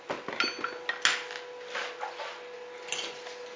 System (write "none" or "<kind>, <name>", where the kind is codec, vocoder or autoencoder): none